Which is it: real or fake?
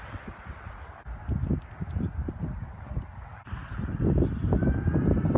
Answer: real